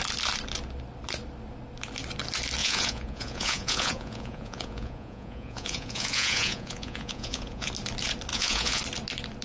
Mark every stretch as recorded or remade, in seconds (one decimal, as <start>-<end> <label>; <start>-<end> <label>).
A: 0.0-2.6 recorded; 2.6-7.7 remade; 7.7-8.3 recorded; 8.3-8.8 remade; 8.8-9.4 recorded